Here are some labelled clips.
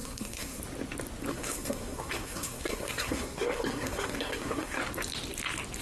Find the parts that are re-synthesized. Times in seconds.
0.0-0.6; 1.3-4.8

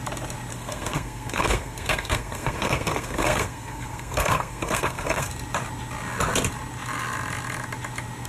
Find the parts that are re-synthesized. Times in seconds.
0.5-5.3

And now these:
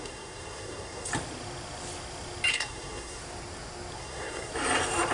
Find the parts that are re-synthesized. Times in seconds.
0.0-1.1; 2.5-3.2; 4.0-4.5